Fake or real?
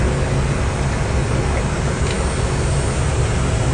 real